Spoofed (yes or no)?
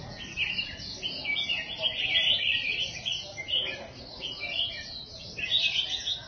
no